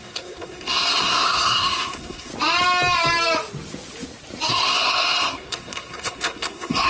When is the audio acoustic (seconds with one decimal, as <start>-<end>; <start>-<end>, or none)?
2.3-4.5